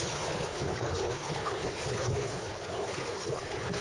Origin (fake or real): fake